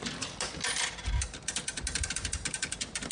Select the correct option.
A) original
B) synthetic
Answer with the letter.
A